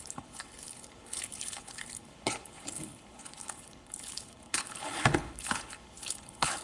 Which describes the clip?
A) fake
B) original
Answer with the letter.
A